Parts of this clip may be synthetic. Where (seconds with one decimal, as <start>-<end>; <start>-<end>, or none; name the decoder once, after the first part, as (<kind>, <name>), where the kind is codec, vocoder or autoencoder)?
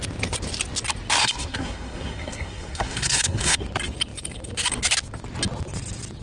1.2-3.6 (codec, SNAC)